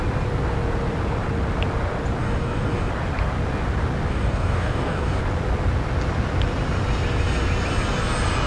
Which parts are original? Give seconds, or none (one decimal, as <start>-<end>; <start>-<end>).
0.0-2.2; 2.9-4.1; 5.2-8.5